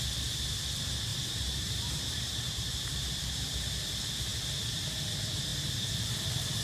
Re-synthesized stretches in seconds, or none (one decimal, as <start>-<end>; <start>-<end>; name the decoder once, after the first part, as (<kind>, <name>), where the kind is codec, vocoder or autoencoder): 1.1-3.9 (vocoder, BigVGAN v2); 5.5-6.1